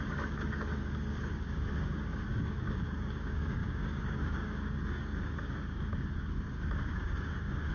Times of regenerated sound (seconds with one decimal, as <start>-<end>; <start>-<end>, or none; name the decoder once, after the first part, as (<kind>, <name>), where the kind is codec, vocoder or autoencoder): 0.0-7.7 (codec, DAC)